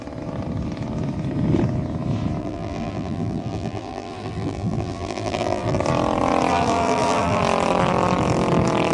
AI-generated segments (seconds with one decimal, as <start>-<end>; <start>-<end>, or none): 2.4-5.8; 6.5-7.4